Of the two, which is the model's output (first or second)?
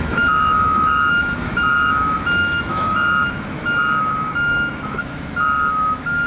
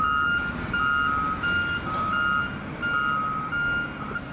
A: first